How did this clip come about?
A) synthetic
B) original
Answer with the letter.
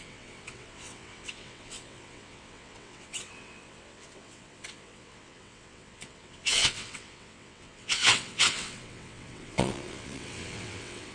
A